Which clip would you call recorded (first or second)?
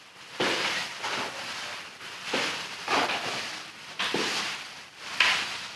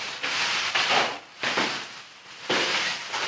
second